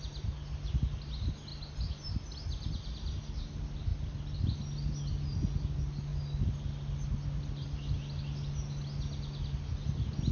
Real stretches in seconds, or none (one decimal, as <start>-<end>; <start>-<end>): 0.0-10.3